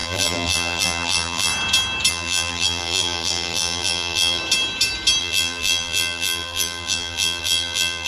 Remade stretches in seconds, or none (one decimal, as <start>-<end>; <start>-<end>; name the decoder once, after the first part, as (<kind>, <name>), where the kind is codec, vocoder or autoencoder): 0.0-1.5 (vocoder, BigVGAN v2); 2.1-4.4; 5.2-8.1